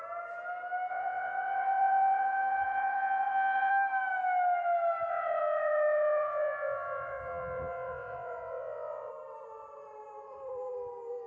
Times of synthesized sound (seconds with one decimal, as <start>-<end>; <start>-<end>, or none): 0.9-3.7; 5.1-9.1